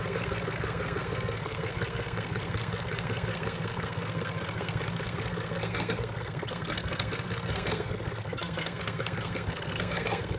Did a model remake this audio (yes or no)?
yes